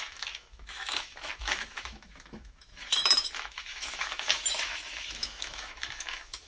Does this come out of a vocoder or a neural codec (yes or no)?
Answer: yes